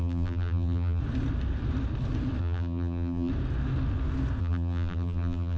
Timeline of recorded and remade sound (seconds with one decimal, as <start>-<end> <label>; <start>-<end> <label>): 0.0-1.0 remade; 1.0-2.4 recorded; 2.4-3.3 remade; 3.3-4.4 recorded; 4.4-5.6 remade